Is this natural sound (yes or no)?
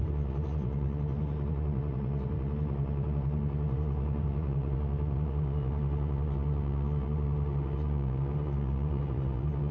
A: no